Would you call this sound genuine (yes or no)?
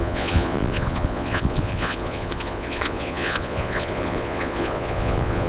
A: no